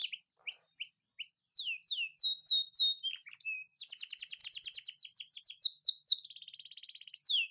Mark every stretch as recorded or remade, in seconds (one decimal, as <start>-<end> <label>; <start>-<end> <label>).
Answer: 0.0-7.5 recorded